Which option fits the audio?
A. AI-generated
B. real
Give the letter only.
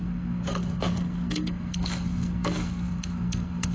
A